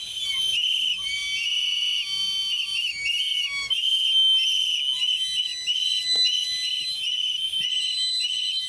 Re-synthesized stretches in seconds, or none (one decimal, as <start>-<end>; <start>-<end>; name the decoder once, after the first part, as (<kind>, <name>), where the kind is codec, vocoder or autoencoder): none